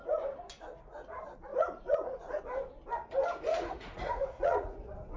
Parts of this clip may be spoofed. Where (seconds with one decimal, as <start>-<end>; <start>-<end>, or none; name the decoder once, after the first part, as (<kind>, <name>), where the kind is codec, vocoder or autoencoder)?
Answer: 1.5-2.4 (vocoder, Vocos); 3.5-4.8